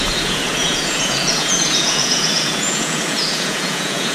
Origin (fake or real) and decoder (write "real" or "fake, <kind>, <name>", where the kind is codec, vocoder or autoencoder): fake, vocoder, Vocos